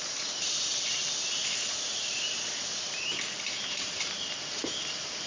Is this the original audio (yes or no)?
no